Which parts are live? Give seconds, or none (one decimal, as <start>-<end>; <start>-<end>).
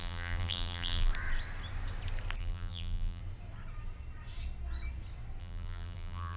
1.1-2.4; 3.2-5.4